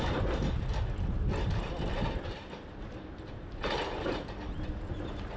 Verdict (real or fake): real